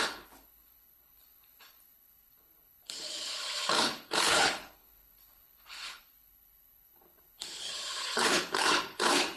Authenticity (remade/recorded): remade